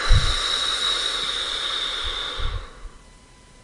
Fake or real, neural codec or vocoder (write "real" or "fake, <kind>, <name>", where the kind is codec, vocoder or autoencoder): fake, vocoder, BigVGAN v2